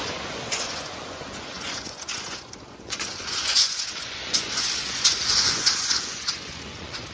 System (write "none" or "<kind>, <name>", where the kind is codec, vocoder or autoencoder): vocoder, Vocos